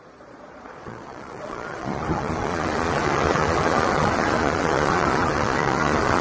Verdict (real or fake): fake